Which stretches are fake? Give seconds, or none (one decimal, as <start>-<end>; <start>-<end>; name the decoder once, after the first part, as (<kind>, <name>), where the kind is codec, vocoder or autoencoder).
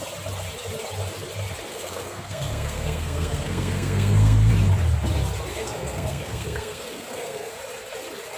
1.7-4.5 (codec, SNAC); 5.5-7.5